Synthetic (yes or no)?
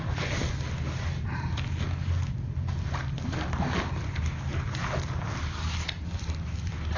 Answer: no